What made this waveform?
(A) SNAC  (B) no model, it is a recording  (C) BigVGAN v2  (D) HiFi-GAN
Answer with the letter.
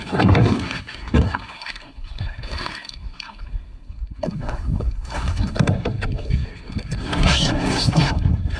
A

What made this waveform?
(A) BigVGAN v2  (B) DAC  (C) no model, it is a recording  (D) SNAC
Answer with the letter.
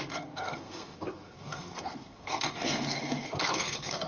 D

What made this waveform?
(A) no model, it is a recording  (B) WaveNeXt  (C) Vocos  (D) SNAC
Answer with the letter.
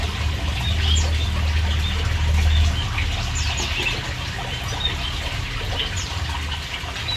A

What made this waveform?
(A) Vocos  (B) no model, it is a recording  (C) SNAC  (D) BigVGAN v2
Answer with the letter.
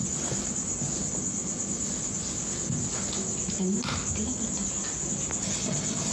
B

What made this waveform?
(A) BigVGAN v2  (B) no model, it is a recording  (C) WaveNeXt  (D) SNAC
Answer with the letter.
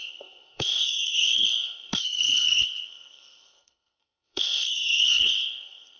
D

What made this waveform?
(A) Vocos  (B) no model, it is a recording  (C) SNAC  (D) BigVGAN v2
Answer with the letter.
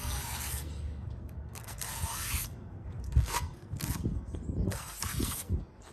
C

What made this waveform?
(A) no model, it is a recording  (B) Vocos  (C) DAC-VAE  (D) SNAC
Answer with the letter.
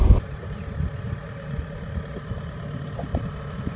A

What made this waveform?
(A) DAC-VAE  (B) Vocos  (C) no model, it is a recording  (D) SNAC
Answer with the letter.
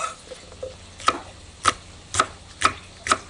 C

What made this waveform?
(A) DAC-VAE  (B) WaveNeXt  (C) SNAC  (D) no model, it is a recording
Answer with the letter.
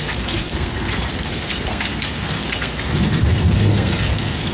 C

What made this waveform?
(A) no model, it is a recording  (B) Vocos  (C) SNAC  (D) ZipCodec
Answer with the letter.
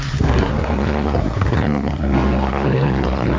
C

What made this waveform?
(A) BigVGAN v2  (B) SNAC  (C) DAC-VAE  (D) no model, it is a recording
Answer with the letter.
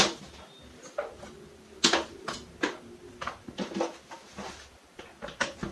D